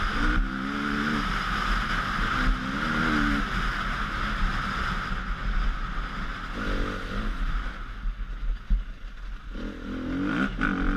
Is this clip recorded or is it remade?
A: recorded